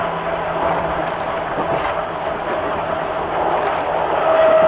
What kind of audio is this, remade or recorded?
recorded